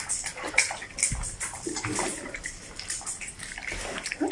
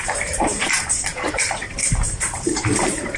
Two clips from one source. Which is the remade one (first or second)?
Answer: second